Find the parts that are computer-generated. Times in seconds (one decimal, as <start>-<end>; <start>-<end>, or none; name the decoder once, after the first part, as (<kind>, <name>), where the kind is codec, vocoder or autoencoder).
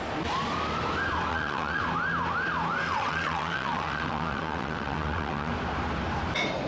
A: 1.3-1.8 (vocoder, WaveNeXt); 2.9-5.5